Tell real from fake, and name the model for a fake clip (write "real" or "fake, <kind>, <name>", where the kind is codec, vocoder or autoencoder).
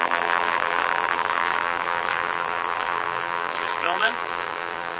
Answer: fake, vocoder, BigVGAN v2